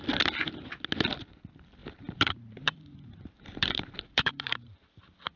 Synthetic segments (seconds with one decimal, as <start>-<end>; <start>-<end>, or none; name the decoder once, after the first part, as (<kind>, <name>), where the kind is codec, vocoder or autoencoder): 1.8-5.0 (vocoder, BigVGAN v2)